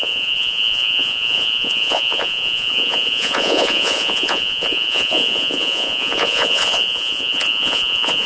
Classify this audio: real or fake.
fake